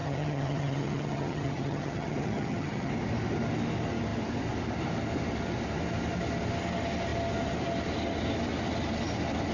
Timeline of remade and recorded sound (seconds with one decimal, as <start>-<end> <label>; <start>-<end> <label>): 0.0-2.9 remade; 2.9-9.5 recorded